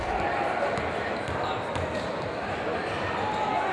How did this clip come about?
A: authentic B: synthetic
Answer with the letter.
B